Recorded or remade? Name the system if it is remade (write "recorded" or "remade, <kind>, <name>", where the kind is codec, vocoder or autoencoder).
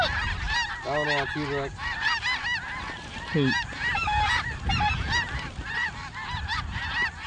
recorded